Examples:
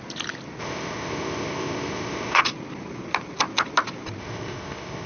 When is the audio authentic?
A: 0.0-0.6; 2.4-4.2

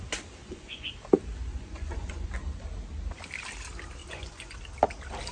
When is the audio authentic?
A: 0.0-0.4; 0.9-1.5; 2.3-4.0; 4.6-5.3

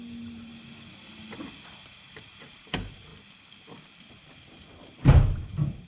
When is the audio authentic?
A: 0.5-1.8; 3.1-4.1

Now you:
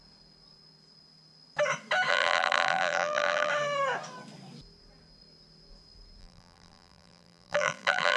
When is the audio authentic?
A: 0.0-2.1; 3.5-6.2

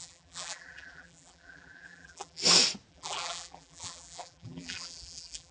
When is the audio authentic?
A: 2.4-2.9